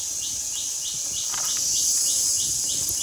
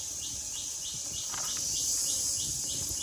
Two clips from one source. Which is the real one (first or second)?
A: first